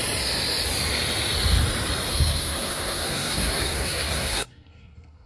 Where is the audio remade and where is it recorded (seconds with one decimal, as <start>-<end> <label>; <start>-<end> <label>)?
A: 0.0-2.1 recorded; 2.1-5.3 remade